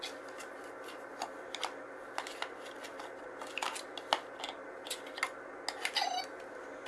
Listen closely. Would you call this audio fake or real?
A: real